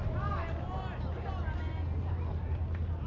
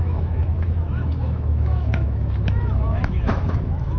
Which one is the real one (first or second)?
first